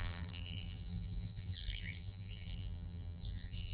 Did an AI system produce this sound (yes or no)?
yes